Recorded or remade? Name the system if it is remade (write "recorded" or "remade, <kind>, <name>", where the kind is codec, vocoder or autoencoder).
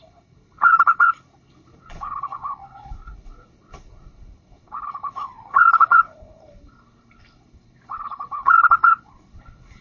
remade, codec, HILCodec